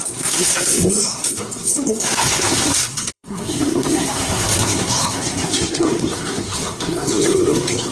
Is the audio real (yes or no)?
no